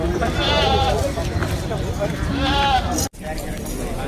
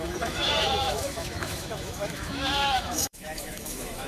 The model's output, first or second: second